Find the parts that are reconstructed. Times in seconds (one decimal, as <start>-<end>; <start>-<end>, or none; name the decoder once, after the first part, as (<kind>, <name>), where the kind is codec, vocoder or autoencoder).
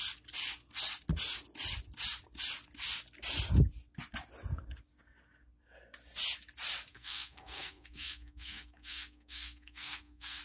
6.9-10.4 (codec, SNAC)